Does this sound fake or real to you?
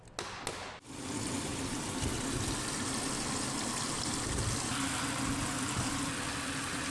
real